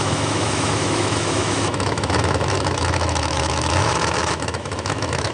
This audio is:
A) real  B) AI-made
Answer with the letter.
B